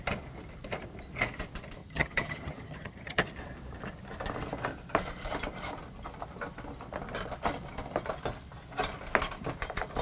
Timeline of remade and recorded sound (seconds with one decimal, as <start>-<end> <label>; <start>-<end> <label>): 0.0-1.8 recorded; 1.8-3.2 remade; 3.2-10.0 recorded